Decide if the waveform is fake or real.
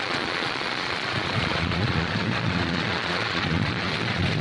fake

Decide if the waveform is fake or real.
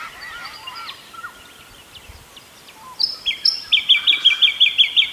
fake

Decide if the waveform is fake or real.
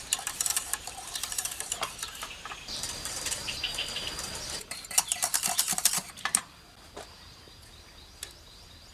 fake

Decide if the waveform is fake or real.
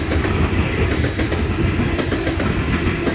real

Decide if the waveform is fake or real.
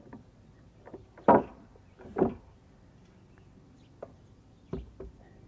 real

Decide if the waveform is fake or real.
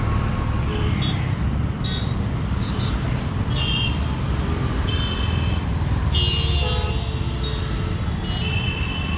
real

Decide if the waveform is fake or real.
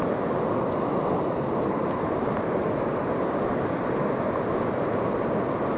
real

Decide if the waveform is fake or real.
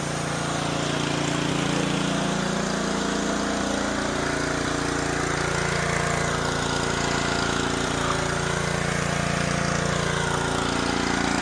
real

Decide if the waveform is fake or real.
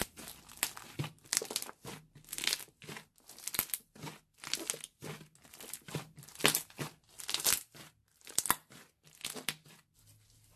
real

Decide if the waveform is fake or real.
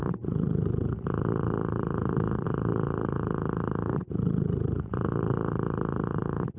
fake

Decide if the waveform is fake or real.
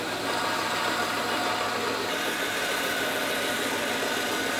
real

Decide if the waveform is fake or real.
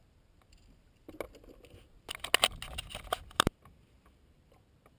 real